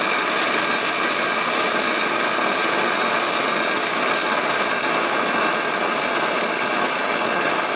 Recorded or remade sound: recorded